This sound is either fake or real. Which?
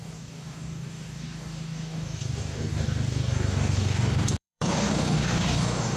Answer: fake